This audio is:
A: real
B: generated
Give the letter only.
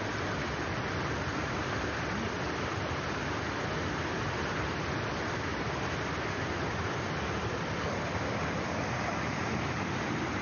A